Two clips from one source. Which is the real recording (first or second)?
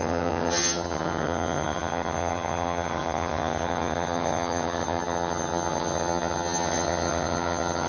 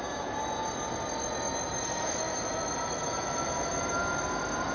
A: second